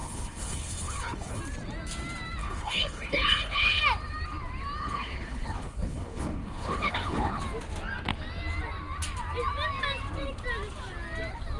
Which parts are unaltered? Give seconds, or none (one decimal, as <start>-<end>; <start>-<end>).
1.4-2.4; 3.8-4.8; 7.4-11.6